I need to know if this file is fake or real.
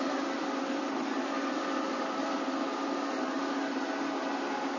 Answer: real